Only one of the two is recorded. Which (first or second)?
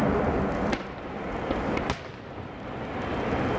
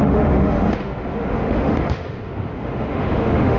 first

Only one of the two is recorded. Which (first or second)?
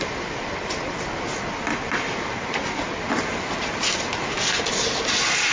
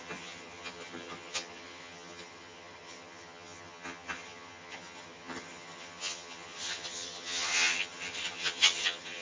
first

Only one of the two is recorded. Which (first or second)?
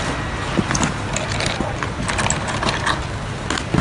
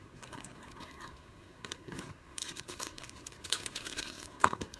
first